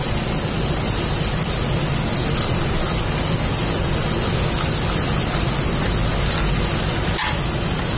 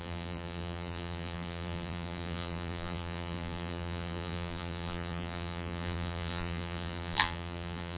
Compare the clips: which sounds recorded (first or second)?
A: first